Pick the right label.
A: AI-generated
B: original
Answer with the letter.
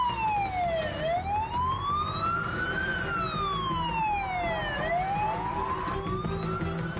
B